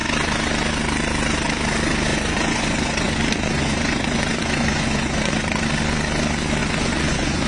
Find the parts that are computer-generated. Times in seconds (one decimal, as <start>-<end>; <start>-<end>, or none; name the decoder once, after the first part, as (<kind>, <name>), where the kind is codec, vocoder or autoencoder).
2.1-5.6 (vocoder, Vocos); 6.6-7.5